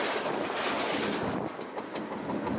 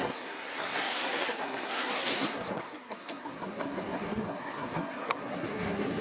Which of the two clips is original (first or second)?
first